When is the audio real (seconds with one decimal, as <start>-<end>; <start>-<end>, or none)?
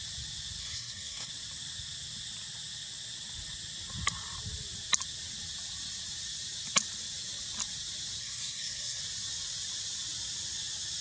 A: 0.0-0.6; 1.3-8.2; 9.0-11.0